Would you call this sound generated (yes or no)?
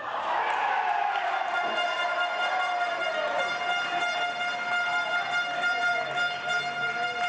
no